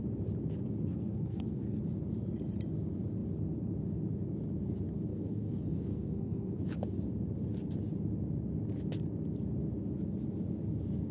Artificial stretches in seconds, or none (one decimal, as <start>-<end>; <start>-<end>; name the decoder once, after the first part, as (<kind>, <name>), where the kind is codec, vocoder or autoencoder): 0.9-1.8 (codec, SNAC); 5.1-6.6